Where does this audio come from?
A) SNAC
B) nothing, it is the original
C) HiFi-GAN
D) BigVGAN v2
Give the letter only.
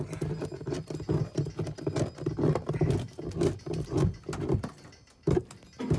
B